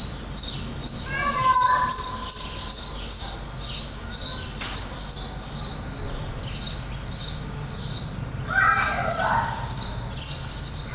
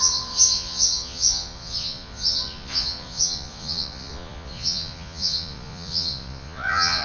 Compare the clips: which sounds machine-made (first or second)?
second